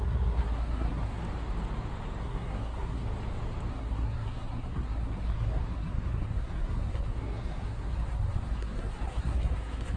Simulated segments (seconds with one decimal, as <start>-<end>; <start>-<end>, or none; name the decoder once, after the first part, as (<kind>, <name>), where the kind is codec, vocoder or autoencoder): 0.0-1.2 (codec, SNAC); 2.2-3.1; 3.7-10.0